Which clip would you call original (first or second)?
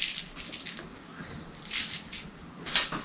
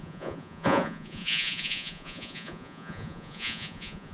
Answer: first